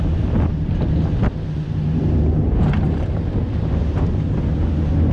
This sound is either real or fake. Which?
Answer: real